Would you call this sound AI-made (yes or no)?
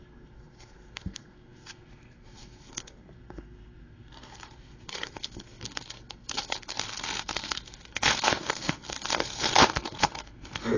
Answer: yes